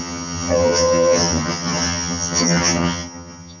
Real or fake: fake